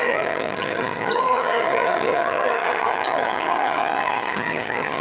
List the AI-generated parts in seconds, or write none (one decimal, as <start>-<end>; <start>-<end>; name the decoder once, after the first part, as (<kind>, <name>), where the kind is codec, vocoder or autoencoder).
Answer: 0.0-5.0 (vocoder, HiFi-GAN)